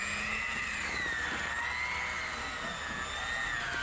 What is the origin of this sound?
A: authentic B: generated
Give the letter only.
A